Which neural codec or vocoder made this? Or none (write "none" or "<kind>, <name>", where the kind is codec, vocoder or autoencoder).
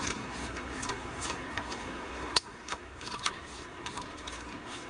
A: codec, SNAC